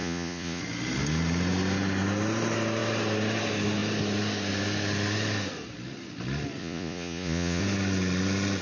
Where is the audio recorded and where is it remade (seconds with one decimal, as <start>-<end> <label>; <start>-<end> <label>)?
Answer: 0.0-0.6 remade; 0.6-6.6 recorded; 6.6-7.6 remade; 7.6-8.6 recorded